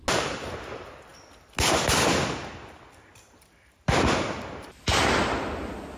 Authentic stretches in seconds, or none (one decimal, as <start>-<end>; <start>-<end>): 0.0-6.0

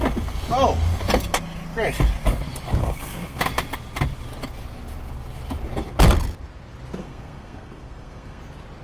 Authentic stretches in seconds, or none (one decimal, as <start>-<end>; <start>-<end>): 0.0-2.8; 3.4-7.0; 8.4-8.8

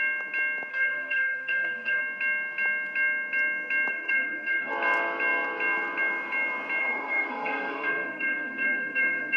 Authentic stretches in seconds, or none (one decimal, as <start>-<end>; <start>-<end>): 0.0-0.7; 2.0-3.9; 4.7-6.8

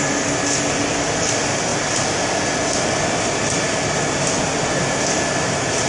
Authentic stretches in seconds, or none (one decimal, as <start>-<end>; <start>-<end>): 0.0-5.9

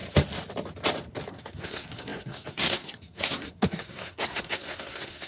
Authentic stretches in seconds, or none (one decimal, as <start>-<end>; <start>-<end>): 0.0-1.3